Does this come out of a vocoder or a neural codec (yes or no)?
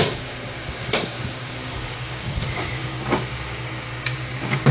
yes